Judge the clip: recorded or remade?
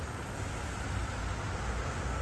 recorded